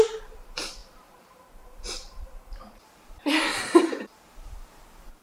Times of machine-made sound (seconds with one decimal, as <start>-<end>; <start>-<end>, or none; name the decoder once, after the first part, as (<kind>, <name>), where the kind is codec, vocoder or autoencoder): 0.0-5.2 (vocoder, BigVGAN v2)